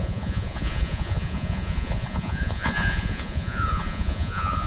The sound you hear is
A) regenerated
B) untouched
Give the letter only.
A